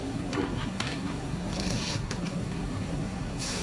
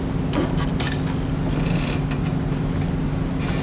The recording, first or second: second